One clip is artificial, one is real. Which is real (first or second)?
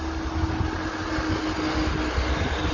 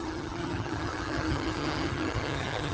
first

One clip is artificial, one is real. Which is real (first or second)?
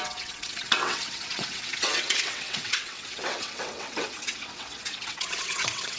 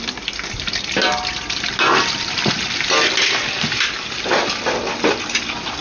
second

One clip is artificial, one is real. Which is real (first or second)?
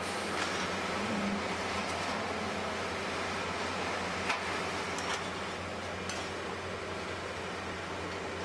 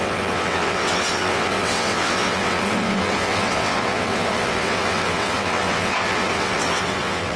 first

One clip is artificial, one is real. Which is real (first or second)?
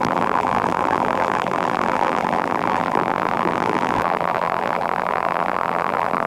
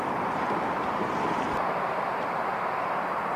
second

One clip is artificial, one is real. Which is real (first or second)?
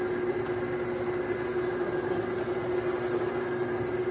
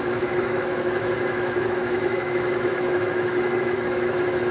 first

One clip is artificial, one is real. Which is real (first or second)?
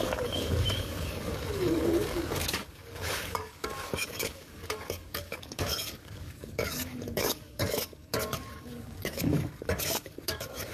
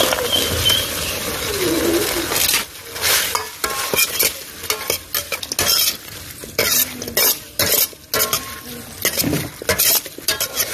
second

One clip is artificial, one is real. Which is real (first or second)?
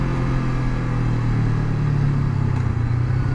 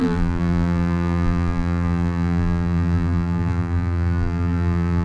first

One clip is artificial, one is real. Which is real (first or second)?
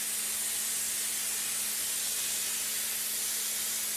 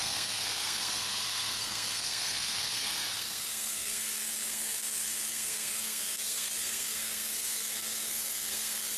first